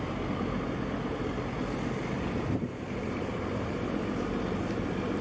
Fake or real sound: real